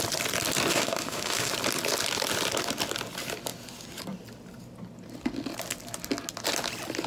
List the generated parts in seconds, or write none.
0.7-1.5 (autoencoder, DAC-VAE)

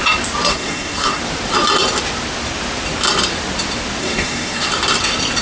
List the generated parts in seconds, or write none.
0.5-1.2 (codec, SNAC); 4.0-4.7

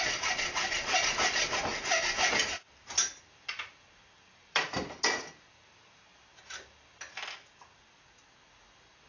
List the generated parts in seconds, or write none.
none

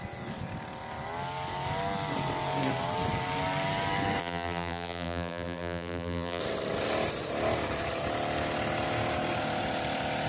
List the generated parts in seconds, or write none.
4.2-6.4 (vocoder, BigVGAN v2)

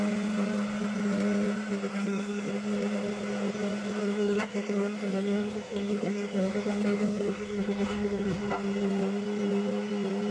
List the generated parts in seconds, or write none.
1.9-2.5 (codec, SNAC); 4.0-8.4

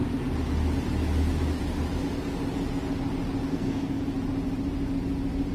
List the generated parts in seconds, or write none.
3.5-4.0 (codec, SNAC)

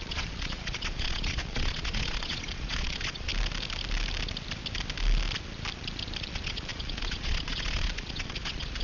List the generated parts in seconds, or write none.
0.0-3.3 (vocoder, Vocos); 6.2-8.8